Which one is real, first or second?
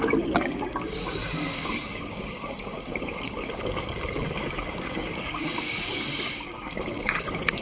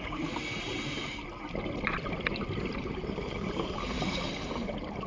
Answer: second